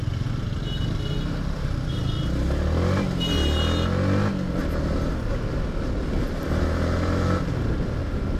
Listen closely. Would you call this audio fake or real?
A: real